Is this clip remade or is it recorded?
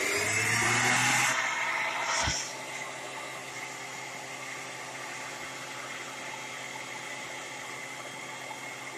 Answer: recorded